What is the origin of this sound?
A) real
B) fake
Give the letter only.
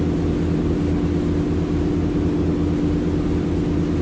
A